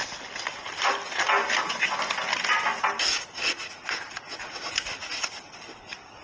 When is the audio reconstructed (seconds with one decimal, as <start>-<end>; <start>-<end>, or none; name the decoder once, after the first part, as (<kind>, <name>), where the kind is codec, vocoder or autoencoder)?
none

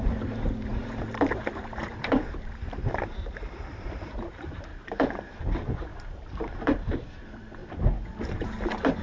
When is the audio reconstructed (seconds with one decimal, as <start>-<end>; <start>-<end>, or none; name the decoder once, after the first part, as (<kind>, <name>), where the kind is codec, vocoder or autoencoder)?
0.0-7.6 (vocoder, BigVGAN v2); 8.2-9.0

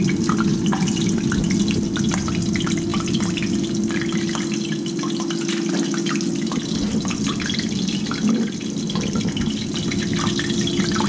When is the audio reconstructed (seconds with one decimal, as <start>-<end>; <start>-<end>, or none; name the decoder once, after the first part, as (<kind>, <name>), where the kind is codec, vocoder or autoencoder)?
0.5-1.0 (vocoder, BigVGAN v2)

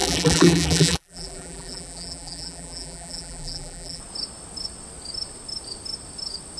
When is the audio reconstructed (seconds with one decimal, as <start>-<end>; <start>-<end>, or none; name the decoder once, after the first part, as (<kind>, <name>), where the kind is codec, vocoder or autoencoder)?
0.0-4.0 (vocoder, BigVGAN v2)

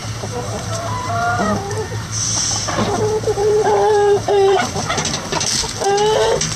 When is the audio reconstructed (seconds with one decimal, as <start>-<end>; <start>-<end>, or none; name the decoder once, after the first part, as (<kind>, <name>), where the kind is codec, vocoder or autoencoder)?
0.0-1.8 (vocoder, BigVGAN v2); 3.4-4.8

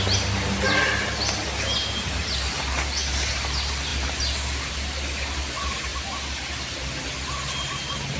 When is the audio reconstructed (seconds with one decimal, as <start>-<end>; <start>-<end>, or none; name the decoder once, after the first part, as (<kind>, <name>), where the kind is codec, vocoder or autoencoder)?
5.9-6.9 (vocoder, BigVGAN v2)